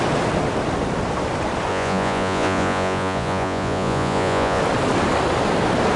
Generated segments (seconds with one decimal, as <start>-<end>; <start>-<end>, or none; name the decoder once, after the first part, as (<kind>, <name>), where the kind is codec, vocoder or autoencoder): 1.7-4.6 (vocoder, Vocos)